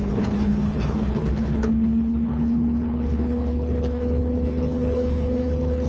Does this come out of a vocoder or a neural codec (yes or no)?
yes